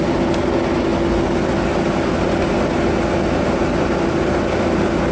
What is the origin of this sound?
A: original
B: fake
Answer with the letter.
A